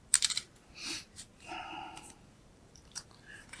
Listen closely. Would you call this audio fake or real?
fake